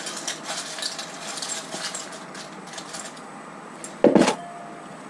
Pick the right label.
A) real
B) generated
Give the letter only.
A